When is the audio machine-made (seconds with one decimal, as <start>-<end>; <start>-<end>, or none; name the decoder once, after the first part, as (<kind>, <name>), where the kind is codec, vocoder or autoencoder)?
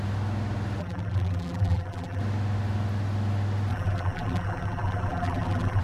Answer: 0.8-2.2 (vocoder, BigVGAN v2); 3.7-5.8